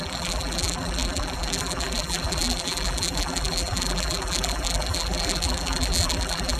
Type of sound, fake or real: fake